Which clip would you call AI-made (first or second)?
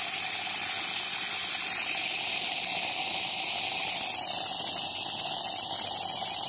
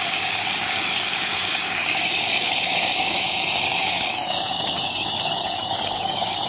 second